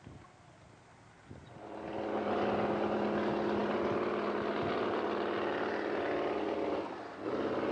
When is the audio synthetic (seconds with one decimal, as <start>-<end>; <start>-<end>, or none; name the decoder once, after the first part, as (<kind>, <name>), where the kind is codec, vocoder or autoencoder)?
none